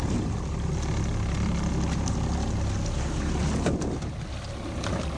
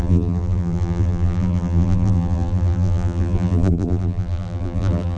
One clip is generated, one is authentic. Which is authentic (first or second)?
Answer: first